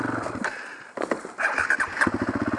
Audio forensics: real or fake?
real